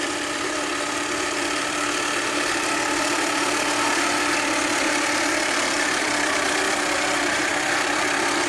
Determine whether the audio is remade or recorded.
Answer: remade